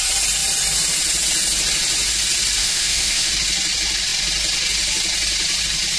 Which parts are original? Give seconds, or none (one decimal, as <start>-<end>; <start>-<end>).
0.0-2.6; 3.3-6.0